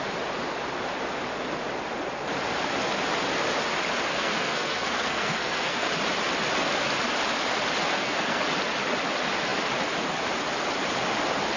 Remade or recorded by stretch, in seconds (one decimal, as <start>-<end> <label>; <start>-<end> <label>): 0.0-4.1 recorded; 4.1-5.9 remade; 5.9-7.9 recorded; 7.9-8.4 remade; 8.4-11.6 recorded